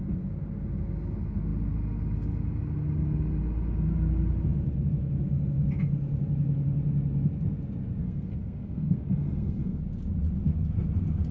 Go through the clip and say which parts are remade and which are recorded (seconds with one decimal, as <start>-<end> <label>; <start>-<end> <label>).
0.0-8.0 recorded; 8.0-9.8 remade; 9.8-11.3 recorded